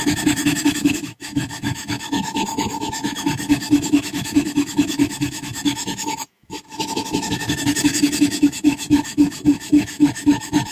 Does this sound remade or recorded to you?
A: remade